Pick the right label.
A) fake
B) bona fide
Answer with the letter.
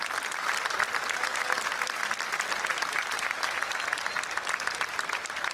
B